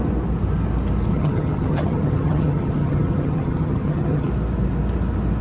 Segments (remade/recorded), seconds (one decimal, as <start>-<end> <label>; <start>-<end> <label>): 0.0-1.1 recorded; 1.1-4.3 remade; 4.3-5.4 recorded